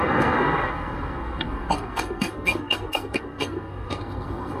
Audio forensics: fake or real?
fake